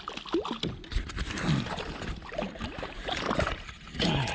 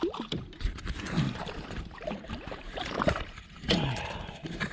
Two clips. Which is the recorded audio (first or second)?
first